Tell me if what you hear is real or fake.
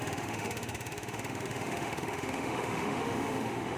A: fake